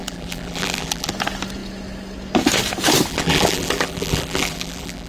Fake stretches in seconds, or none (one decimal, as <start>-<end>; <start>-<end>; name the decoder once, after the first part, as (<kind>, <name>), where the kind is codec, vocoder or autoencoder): 0.0-1.1 (vocoder, BigVGAN v2); 3.1-5.1